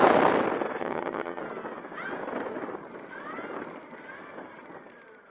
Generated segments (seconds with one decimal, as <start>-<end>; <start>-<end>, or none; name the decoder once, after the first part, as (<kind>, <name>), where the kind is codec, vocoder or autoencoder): 0.8-1.4 (vocoder, HiFi-GAN)